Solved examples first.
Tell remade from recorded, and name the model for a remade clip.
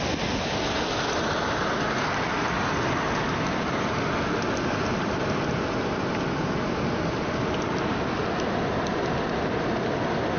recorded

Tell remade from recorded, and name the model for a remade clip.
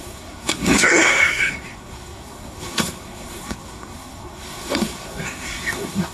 remade, codec, SNAC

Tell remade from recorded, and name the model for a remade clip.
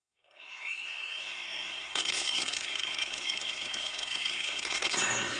remade, codec, SNAC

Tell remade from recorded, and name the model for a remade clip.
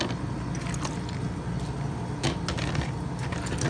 recorded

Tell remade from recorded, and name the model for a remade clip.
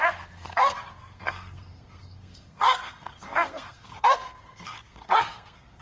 remade, codec, SNAC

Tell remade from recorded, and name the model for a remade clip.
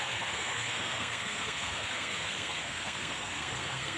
remade, codec, SNAC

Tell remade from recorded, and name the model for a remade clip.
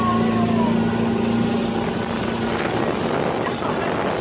recorded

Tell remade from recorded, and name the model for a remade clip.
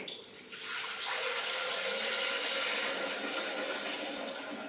recorded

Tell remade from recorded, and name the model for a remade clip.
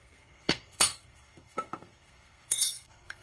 remade, codec, SNAC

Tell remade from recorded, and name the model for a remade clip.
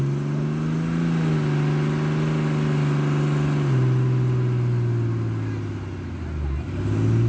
recorded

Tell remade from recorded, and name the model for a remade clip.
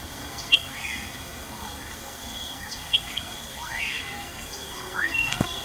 remade, codec, SNAC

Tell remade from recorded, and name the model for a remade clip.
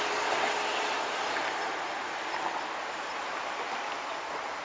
recorded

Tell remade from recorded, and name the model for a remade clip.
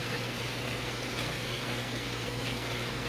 remade, codec, SNAC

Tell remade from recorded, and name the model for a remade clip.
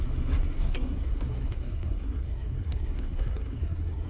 remade, codec, SNAC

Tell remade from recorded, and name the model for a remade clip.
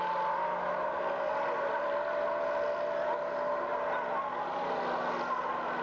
recorded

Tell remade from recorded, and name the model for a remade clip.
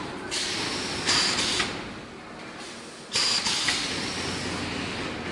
recorded